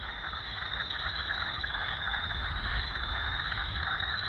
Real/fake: fake